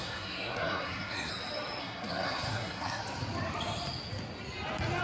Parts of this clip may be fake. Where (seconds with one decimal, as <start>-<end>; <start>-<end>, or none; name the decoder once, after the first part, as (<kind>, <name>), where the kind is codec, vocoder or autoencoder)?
0.0-1.3 (codec, SNAC); 1.8-3.0